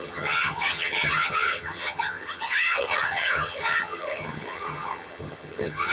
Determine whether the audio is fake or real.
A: fake